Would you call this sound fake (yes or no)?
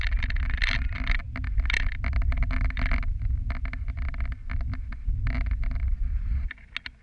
no